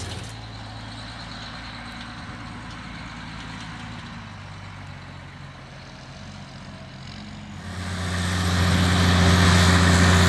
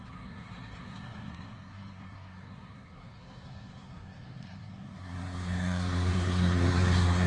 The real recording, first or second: first